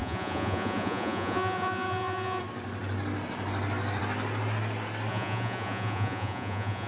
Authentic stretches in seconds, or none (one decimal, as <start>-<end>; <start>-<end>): 2.4-5.1